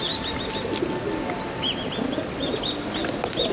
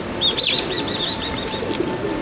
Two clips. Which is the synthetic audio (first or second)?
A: second